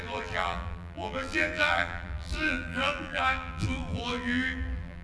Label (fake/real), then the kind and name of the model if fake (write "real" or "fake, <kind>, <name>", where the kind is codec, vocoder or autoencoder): fake, vocoder, BigVGAN v2